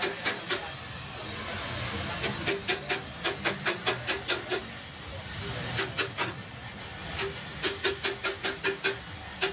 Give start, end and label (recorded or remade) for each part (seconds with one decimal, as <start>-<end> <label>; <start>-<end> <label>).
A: 0.0-9.5 recorded